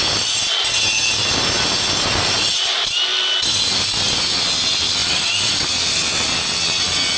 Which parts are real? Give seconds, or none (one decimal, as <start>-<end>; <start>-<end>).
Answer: 0.0-5.0; 5.5-7.2